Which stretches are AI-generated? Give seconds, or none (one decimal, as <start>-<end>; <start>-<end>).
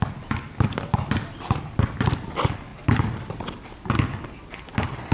none